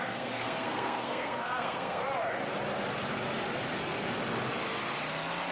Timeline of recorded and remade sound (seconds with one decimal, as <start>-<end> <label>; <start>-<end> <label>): 0.0-2.0 remade; 2.0-5.5 recorded